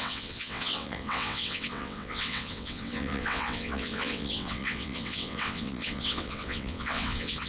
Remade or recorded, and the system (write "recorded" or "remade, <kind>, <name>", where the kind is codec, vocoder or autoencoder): remade, vocoder, WaveNeXt